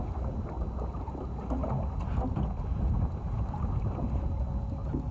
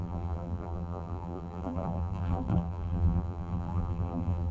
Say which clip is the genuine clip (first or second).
first